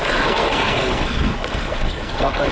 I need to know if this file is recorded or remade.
remade